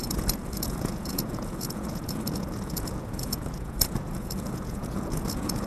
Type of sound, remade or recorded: remade